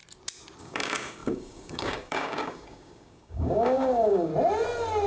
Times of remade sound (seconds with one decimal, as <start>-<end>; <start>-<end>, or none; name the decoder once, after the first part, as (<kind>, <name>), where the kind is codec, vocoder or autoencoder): 0.6-4.3 (codec, DAC)